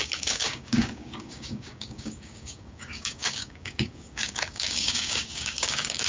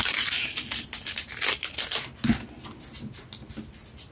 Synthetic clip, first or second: first